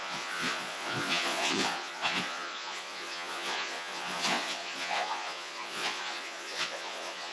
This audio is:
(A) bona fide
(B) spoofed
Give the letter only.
B